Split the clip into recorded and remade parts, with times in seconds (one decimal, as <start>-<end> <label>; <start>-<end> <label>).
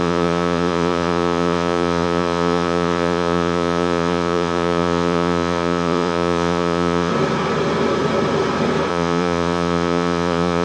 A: 0.0-7.1 remade; 7.1-8.9 recorded; 8.9-10.6 remade